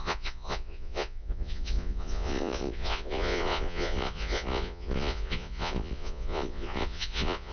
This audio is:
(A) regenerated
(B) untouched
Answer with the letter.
A